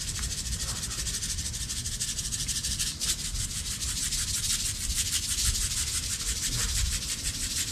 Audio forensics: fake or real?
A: real